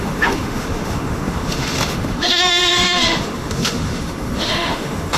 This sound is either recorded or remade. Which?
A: remade